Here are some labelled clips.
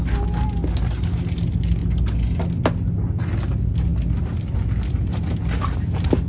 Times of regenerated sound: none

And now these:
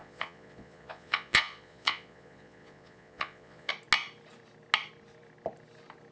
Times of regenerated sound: 0.0-3.7 (vocoder, Vocos)

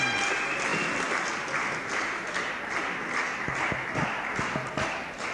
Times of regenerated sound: none

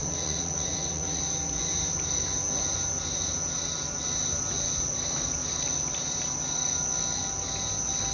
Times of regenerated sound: 0.0-1.2 (vocoder, Vocos)

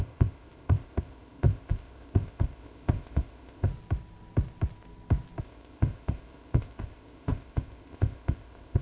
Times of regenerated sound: 0.0-3.7 (codec, ZipCodec); 5.4-8.8